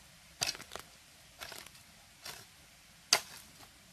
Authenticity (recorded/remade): recorded